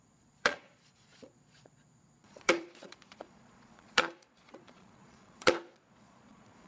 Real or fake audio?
fake